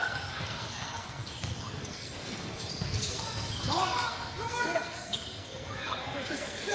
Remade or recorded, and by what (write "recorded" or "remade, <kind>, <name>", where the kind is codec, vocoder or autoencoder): remade, codec, SNAC